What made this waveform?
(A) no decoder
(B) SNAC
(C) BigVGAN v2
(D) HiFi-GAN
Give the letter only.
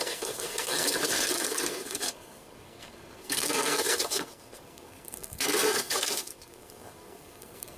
B